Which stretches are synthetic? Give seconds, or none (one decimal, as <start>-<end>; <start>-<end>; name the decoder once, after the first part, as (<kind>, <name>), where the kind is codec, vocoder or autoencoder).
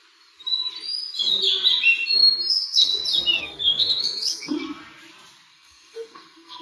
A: 2.5-2.9 (codec, SNAC); 3.4-4.6; 5.5-6.6